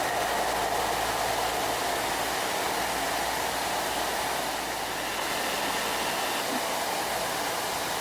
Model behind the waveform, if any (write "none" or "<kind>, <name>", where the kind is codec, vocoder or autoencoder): none